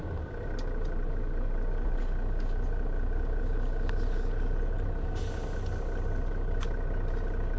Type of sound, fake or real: real